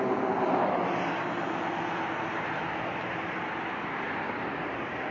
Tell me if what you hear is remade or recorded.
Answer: recorded